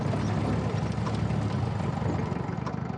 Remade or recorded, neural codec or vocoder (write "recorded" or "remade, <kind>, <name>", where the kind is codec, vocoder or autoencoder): recorded